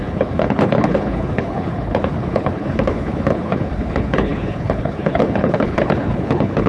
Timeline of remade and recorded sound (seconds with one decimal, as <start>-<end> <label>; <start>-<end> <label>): 0.0-6.7 remade